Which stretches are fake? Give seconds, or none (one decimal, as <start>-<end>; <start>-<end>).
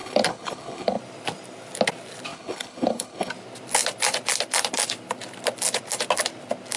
0.0-1.0; 2.3-3.3